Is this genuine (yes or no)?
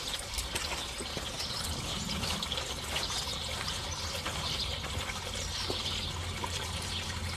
yes